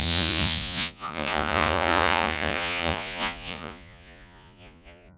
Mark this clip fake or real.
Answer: fake